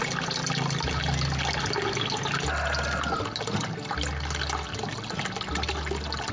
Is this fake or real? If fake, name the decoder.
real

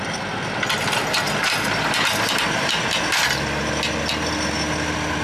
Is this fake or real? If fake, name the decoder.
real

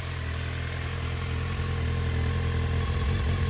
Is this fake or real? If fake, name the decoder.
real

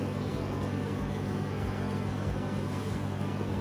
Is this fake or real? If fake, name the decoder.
fake, codec, SNAC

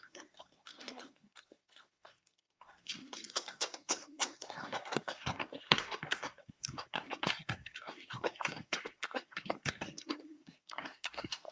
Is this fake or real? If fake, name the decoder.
fake, codec, SNAC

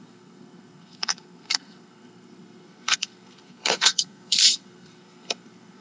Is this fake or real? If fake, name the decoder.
fake, codec, SNAC